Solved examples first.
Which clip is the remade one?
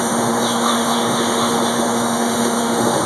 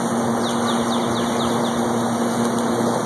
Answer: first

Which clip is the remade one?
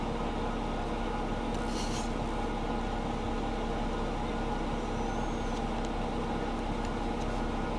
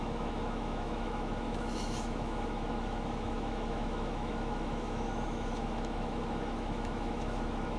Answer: second